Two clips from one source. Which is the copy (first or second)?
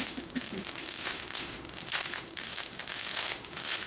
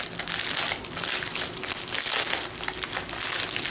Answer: first